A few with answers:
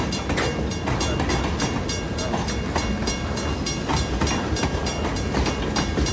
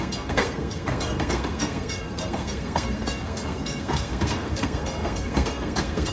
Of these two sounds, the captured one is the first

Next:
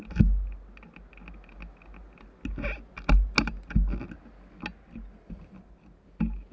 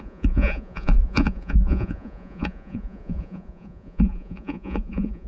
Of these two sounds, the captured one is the first